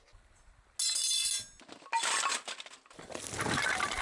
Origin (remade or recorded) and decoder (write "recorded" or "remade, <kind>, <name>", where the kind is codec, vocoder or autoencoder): recorded